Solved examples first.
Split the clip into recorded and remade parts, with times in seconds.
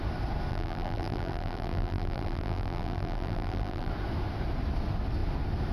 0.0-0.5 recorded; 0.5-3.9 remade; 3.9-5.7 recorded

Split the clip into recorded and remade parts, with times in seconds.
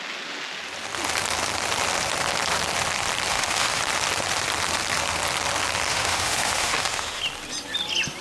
0.0-3.3 recorded; 3.3-3.8 remade; 3.8-5.9 recorded; 5.9-7.2 remade; 7.2-8.2 recorded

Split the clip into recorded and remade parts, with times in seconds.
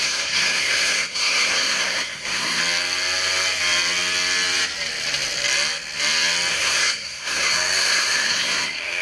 0.0-2.6 remade; 2.6-6.5 recorded; 6.5-9.0 remade